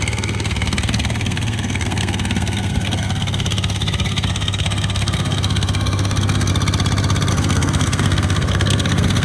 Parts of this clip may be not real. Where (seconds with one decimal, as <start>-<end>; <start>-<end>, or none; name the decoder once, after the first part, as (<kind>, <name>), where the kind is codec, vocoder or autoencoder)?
0.0-6.5 (codec, SNAC); 7.3-9.2